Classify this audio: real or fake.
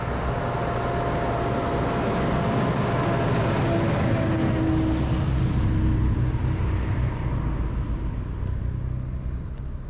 real